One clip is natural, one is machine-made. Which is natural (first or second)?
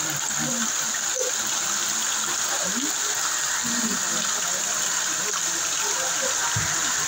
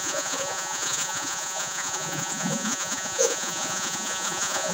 first